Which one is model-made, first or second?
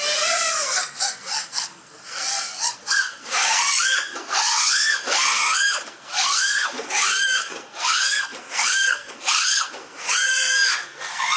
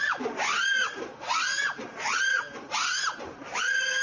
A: first